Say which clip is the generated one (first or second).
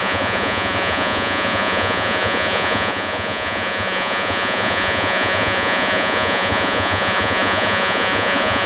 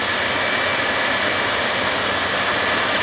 first